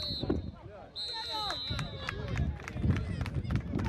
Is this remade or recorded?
recorded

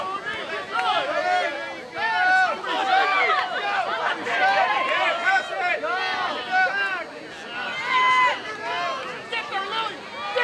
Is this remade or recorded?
recorded